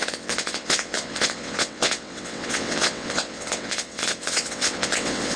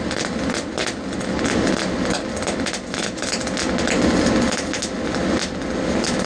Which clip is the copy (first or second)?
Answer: first